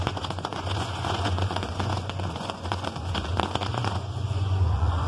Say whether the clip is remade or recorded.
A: remade